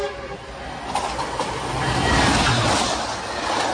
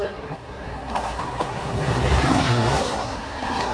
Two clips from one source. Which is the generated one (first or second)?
second